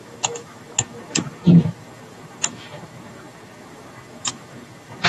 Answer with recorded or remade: remade